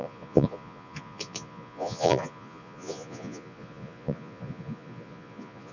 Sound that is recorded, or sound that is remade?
remade